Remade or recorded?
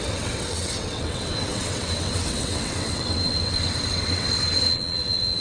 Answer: remade